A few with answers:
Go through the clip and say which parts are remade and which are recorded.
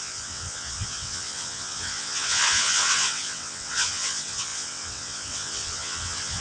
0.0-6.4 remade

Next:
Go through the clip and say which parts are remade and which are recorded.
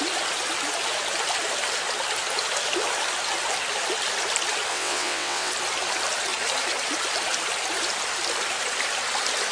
0.0-4.7 recorded; 4.7-5.5 remade; 5.5-9.5 recorded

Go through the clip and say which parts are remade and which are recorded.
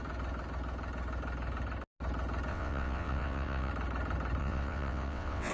0.0-2.5 recorded; 2.5-3.7 remade; 3.7-4.4 recorded; 4.4-5.5 remade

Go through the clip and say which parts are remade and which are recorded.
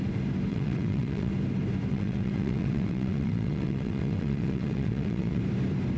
0.0-0.5 recorded; 0.5-1.3 remade; 1.3-1.9 recorded; 1.9-5.4 remade; 5.4-6.0 recorded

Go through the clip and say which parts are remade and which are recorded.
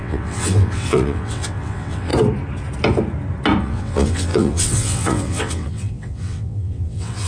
0.0-2.1 remade; 2.1-3.6 recorded; 3.6-7.3 remade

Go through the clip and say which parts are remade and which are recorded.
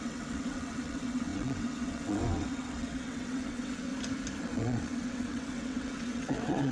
0.0-3.9 remade; 3.9-4.4 recorded; 4.4-6.7 remade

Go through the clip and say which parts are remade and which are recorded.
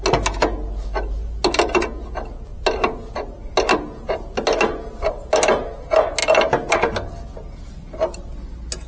0.0-8.9 recorded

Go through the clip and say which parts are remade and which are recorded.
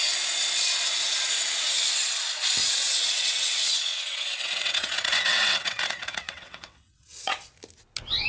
0.0-2.6 recorded; 2.6-7.5 remade; 7.5-8.3 recorded